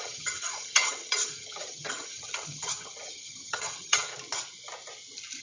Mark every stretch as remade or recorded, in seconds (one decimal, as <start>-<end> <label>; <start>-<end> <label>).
0.0-4.1 remade; 4.1-5.4 recorded